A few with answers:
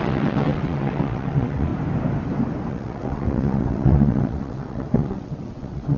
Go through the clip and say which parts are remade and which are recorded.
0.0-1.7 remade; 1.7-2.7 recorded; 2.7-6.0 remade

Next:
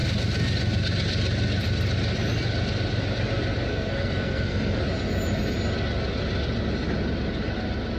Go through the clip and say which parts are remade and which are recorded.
0.0-3.7 recorded; 3.7-4.8 remade; 4.8-8.0 recorded

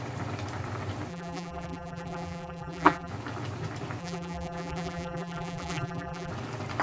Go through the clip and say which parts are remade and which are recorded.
0.0-1.1 recorded; 1.1-3.1 remade; 3.1-4.0 recorded; 4.0-6.3 remade; 6.3-6.8 recorded

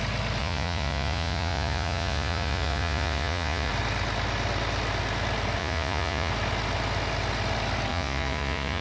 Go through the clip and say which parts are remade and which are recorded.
0.0-0.4 recorded; 0.4-3.7 remade; 3.7-5.6 recorded; 5.6-6.3 remade; 6.3-7.9 recorded; 7.9-8.8 remade